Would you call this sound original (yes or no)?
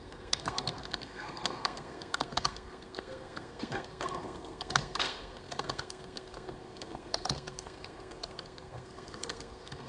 no